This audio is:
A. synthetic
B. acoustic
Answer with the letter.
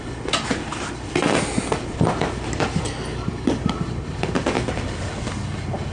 B